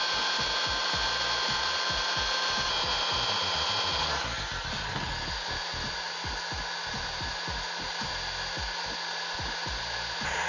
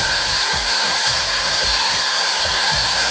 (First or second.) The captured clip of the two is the first